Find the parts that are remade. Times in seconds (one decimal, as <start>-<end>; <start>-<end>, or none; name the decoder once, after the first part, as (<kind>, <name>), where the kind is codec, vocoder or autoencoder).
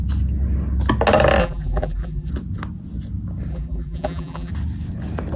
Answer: 1.4-2.3 (vocoder, BigVGAN v2); 3.5-4.5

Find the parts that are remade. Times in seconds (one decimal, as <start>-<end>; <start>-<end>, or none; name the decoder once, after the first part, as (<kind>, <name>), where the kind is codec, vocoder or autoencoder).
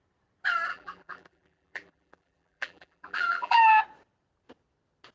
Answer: 0.7-3.8 (vocoder, BigVGAN v2)